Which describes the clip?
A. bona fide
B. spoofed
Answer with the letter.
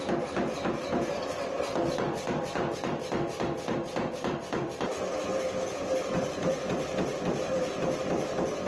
B